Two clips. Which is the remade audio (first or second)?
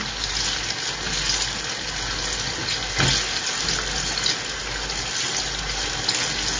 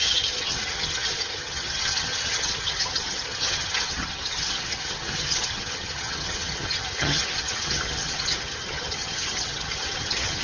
second